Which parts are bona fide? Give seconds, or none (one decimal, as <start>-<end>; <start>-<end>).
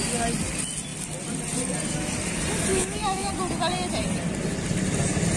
0.0-2.7; 3.3-5.4